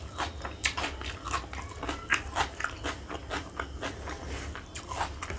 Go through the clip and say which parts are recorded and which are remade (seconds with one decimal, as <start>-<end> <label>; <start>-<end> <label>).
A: 0.0-5.4 recorded

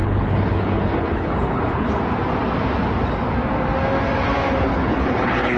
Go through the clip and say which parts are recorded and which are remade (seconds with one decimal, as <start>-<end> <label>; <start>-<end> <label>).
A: 0.0-1.9 remade; 1.9-4.7 recorded; 4.7-5.6 remade

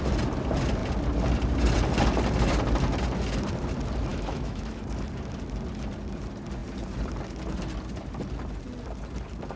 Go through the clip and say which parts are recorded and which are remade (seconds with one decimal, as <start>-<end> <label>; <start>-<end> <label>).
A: 0.0-4.1 recorded; 4.1-4.8 remade; 4.8-9.6 recorded

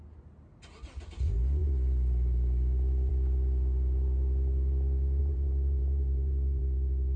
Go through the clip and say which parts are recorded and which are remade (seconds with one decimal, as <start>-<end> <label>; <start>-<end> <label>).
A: 0.0-5.2 recorded; 5.2-6.6 remade; 6.6-7.2 recorded